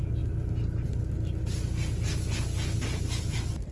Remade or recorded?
recorded